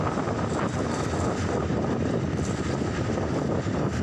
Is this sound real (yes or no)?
yes